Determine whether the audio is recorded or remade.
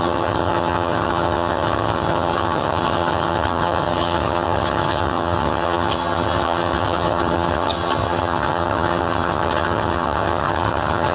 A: remade